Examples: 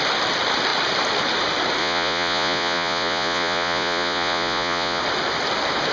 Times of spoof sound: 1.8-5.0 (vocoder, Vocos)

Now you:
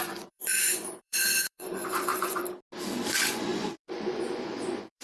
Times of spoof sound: 0.0-2.4 (vocoder, Vocos); 3.1-5.0

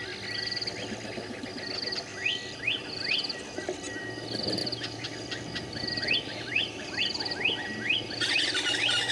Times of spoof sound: 2.1-2.6 (vocoder, BigVGAN v2); 4.6-7.0

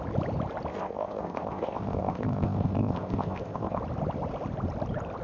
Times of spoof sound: 0.7-3.8 (codec, ZipCodec)